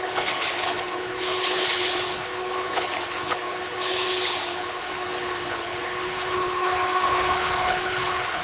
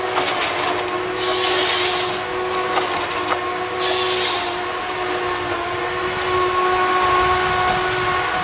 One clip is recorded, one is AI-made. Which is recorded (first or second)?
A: second